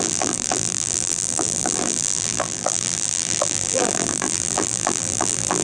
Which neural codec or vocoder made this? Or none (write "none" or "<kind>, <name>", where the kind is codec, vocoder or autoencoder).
vocoder, BigVGAN v2